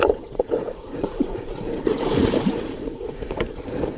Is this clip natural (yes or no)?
no